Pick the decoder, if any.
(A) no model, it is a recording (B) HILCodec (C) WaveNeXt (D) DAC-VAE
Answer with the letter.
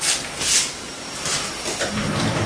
A